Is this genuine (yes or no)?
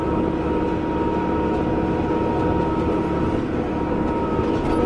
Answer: yes